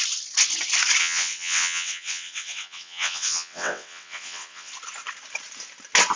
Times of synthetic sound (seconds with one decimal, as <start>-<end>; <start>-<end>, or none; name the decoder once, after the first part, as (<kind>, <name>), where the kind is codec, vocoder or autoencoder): 1.0-4.7 (vocoder, WaveNeXt)